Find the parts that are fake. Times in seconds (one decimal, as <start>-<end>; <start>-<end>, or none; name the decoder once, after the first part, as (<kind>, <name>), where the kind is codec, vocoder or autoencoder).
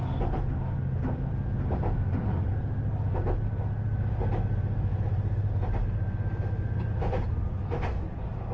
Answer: 0.0-2.5 (vocoder, BigVGAN v2); 4.9-5.5